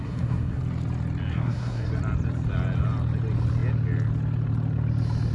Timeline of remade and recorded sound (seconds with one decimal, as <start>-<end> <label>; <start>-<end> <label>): 0.0-0.6 remade; 0.6-1.3 recorded; 1.3-1.9 remade; 1.9-5.3 recorded